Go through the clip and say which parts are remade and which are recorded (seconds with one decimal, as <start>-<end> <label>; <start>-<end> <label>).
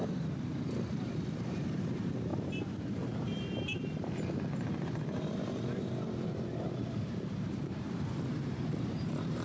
0.0-2.3 remade; 2.3-2.9 recorded; 2.9-9.4 remade